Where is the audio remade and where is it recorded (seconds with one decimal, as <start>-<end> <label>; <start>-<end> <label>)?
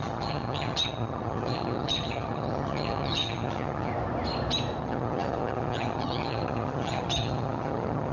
0.0-3.9 remade; 3.9-4.8 recorded; 4.8-8.1 remade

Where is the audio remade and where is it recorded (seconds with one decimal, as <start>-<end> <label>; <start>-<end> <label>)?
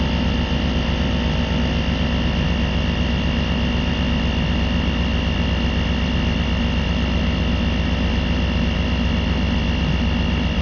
0.0-10.6 recorded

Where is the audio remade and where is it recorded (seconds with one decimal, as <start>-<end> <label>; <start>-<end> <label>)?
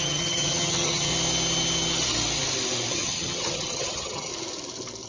0.0-1.1 remade; 1.1-2.9 recorded; 2.9-4.3 remade; 4.3-5.1 recorded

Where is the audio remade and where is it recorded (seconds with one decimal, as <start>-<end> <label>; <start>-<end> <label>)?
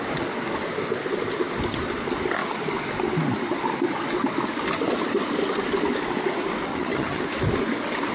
0.0-6.7 recorded; 6.7-7.2 remade; 7.2-8.1 recorded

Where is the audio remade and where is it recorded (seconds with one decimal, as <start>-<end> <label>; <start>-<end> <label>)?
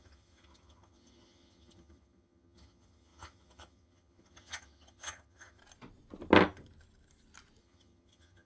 0.0-5.6 remade; 5.6-7.6 recorded; 7.6-8.5 remade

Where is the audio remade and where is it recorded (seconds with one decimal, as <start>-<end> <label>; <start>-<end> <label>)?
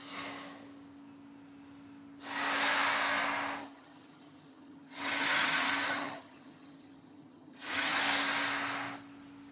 0.0-3.6 recorded; 3.6-8.0 remade; 8.0-9.5 recorded